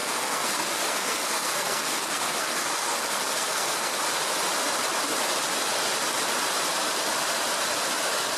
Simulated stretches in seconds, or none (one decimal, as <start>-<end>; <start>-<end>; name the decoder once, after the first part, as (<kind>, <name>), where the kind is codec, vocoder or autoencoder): 0.0-4.0 (codec, SNAC)